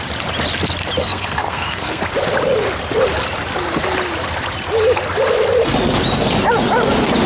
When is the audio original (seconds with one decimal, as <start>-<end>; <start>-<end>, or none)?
0.0-1.0; 2.0-7.3